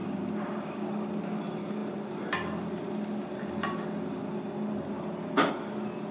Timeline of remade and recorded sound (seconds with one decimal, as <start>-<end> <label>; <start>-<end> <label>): 0.0-0.9 remade; 0.9-6.1 recorded